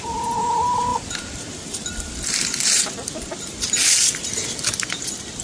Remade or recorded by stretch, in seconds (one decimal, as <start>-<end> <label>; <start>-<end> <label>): 0.0-0.9 recorded; 0.9-3.7 remade; 3.7-5.4 recorded